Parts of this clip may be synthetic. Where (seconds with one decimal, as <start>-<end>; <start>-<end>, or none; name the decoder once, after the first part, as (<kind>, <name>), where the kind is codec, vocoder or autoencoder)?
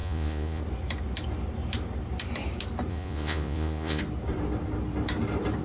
0.0-0.6 (vocoder, Vocos); 2.9-4.0